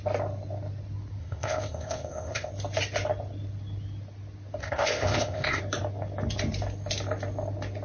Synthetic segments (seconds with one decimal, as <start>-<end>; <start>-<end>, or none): 1.2-2.5; 4.6-5.6